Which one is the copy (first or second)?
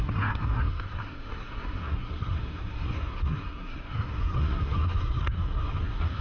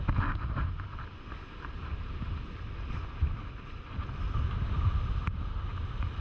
first